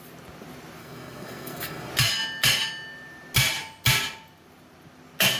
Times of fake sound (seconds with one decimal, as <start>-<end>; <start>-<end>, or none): 0.8-1.9